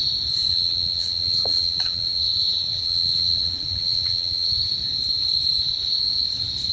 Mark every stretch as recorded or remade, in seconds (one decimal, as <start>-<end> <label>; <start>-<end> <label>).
0.0-0.5 recorded; 0.5-4.5 remade; 4.5-6.7 recorded